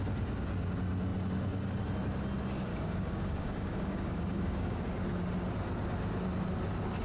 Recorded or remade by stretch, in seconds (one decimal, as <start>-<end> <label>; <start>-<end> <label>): 0.0-2.7 recorded; 2.7-4.8 remade; 4.8-7.0 recorded

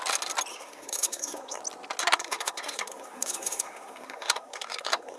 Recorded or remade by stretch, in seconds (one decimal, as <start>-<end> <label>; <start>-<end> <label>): 0.0-0.5 recorded; 0.5-1.6 remade; 1.6-2.0 recorded; 2.0-5.2 remade

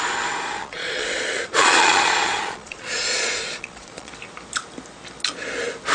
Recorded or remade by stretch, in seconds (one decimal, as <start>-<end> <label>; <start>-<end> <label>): 0.0-0.6 recorded; 0.6-4.1 remade; 4.1-5.9 recorded

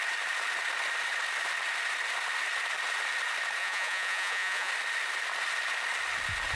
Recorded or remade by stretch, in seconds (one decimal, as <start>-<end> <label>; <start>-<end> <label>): 0.0-3.6 recorded; 3.6-4.7 remade; 4.7-6.6 recorded